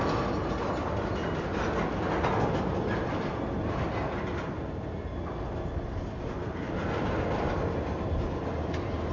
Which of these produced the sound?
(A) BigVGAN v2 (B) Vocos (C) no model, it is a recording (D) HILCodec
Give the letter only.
C